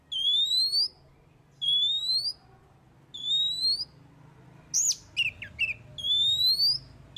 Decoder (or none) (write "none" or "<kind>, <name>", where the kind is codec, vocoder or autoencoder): none